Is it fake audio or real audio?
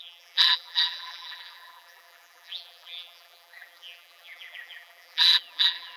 fake